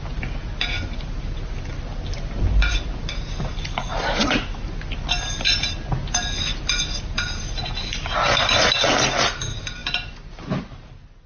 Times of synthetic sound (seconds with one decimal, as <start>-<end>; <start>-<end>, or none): none